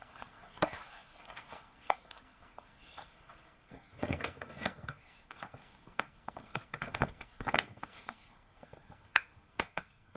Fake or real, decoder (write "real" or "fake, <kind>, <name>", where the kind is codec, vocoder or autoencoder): fake, codec, SNAC